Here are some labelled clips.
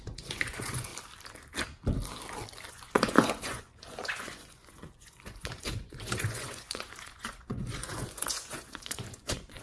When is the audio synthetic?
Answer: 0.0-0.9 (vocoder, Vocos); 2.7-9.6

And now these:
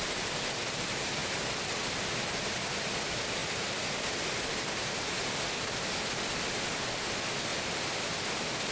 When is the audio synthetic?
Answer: none

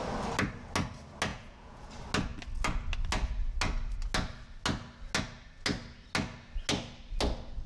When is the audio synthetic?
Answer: 1.3-1.9 (vocoder, Vocos)

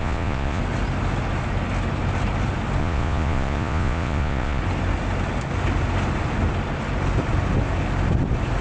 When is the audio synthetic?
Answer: 0.0-0.6 (vocoder, Vocos); 2.8-4.6

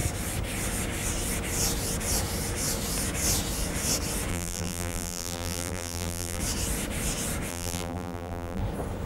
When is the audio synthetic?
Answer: 4.3-6.4 (vocoder, BigVGAN v2); 7.5-8.6

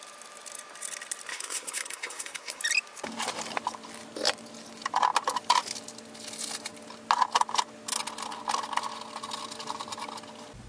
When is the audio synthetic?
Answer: 1.3-2.6 (codec, SNAC)

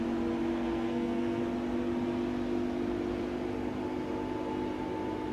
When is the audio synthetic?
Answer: 0.5-1.4 (codec, SNAC)